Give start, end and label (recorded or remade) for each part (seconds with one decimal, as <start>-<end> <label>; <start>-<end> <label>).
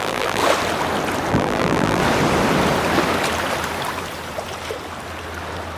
0.0-0.4 remade; 0.4-1.3 recorded; 1.3-2.0 remade; 2.0-5.8 recorded